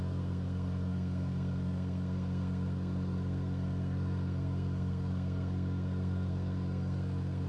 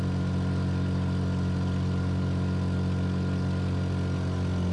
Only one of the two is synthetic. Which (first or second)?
first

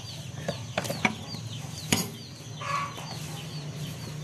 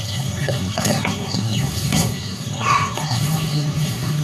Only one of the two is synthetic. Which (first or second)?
second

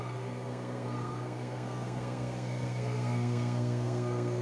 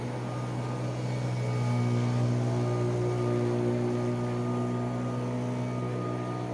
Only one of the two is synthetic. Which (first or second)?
first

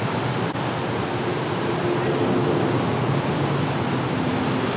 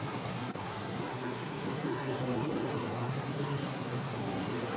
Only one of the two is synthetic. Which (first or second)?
second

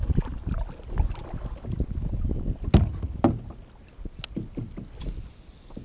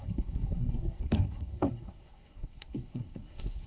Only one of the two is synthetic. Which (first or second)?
second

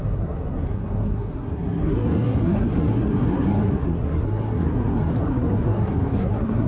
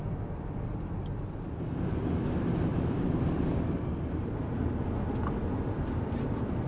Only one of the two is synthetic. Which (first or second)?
first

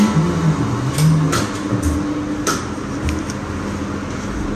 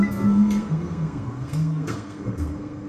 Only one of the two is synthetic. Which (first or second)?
second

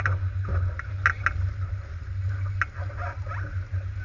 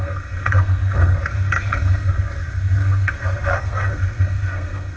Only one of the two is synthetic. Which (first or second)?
second